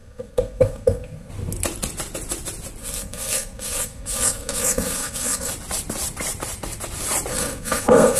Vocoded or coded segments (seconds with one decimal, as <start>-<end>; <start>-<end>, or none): 0.0-1.3; 2.8-5.5; 7.3-8.2

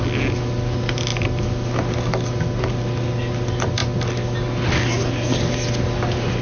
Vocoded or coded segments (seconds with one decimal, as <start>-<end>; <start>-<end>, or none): none

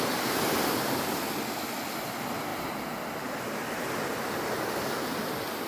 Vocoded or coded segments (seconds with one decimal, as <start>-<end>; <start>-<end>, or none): none

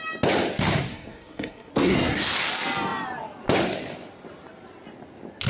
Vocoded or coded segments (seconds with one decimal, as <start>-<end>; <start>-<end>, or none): 0.9-2.3

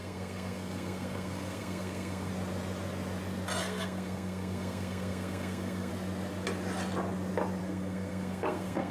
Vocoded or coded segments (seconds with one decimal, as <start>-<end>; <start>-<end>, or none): 0.0-2.3; 3.6-5.9; 7.6-8.9